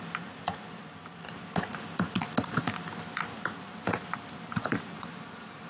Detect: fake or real fake